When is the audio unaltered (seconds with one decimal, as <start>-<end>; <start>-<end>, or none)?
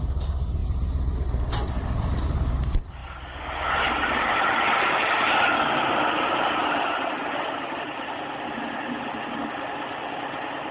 3.0-7.8